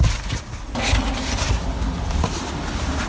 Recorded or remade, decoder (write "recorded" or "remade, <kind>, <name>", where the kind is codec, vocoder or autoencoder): recorded